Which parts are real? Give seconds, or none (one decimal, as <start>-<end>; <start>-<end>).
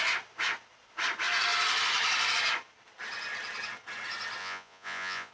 0.0-4.4